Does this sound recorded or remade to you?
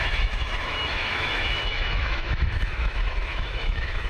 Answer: remade